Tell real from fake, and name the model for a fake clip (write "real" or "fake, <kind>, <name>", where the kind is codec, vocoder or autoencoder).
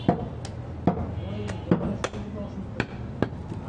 real